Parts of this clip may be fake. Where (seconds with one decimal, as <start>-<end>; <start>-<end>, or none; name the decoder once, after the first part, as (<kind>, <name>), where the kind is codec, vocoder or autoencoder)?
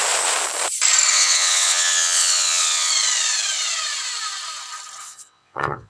1.1-2.9 (vocoder, WaveNeXt); 5.0-5.9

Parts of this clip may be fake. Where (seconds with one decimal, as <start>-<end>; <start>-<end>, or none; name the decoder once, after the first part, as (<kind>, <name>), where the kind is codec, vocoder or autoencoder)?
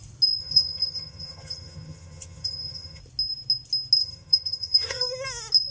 0.4-3.0 (vocoder, HiFi-GAN); 4.0-5.0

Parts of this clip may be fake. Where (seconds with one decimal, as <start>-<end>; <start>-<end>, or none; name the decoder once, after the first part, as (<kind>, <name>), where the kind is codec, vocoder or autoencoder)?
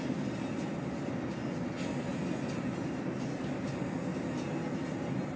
none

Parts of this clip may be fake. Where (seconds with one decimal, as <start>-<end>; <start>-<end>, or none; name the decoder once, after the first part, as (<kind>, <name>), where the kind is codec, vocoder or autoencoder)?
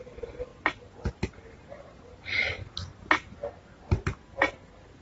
1.6-2.4 (vocoder, BigVGAN v2)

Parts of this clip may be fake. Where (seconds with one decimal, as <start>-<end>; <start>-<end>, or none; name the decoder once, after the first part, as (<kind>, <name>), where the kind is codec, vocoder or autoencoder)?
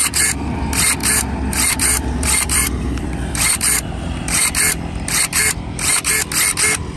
1.0-5.2 (vocoder, BigVGAN v2)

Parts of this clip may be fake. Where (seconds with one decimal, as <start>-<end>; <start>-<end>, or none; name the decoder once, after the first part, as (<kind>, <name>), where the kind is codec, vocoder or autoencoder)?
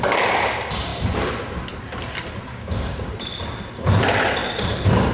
2.5-3.1 (codec, DAC)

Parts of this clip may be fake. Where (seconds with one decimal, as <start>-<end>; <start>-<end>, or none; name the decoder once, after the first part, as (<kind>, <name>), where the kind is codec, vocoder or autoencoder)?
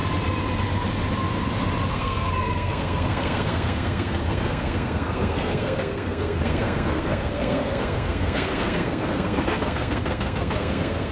1.9-11.1 (codec, SNAC)